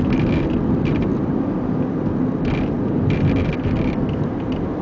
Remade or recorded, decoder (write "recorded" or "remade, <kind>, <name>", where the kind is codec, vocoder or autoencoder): recorded